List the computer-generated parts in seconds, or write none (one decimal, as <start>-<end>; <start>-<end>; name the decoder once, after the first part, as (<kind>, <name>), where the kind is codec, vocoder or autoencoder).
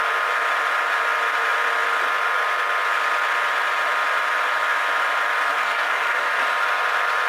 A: 5.5-6.4 (codec, SNAC)